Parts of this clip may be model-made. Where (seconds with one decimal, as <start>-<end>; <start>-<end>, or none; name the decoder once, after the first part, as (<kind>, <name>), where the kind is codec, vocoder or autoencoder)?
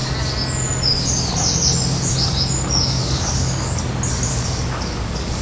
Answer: 3.0-3.8 (codec, DAC); 4.3-5.4